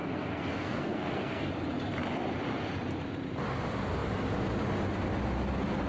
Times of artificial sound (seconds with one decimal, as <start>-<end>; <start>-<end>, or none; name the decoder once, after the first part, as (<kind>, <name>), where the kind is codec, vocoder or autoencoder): 0.0-1.5 (codec, SNAC)